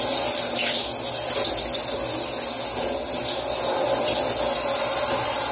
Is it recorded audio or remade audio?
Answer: recorded